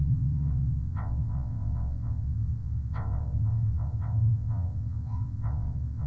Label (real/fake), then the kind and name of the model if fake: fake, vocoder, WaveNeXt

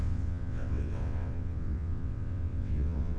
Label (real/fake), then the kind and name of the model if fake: fake, vocoder, WaveNeXt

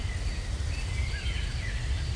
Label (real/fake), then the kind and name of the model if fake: real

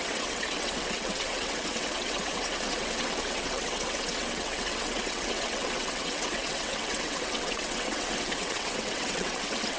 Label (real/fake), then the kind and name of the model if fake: fake, vocoder, WaveNeXt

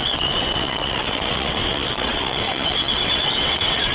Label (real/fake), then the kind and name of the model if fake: fake, vocoder, WaveNeXt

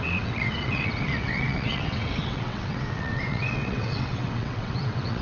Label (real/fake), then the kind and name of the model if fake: fake, vocoder, WaveNeXt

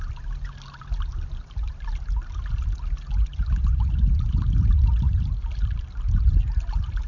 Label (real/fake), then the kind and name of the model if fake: real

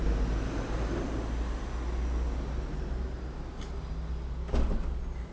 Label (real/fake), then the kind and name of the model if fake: real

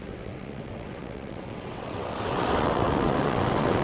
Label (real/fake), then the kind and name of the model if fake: fake, vocoder, WaveNeXt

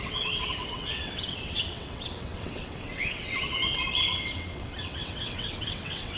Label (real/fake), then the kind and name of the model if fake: fake, vocoder, WaveNeXt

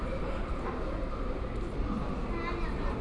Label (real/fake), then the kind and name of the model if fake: real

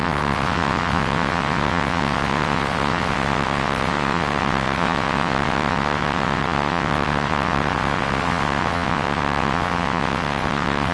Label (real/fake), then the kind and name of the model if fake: fake, vocoder, WaveNeXt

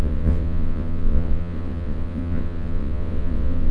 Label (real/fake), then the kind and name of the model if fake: fake, vocoder, WaveNeXt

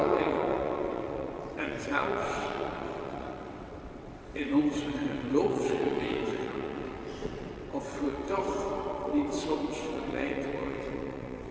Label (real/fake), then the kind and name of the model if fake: fake, vocoder, WaveNeXt